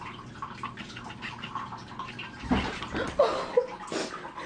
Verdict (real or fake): real